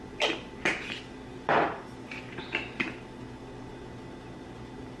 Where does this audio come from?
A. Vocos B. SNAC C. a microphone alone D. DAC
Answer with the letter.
C